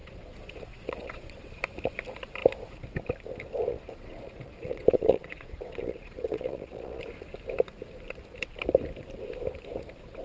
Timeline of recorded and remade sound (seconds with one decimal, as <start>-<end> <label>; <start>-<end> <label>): 0.0-1.5 remade; 1.5-3.7 recorded; 3.7-7.0 remade; 7.0-10.2 recorded